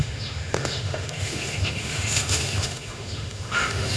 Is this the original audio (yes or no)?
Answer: no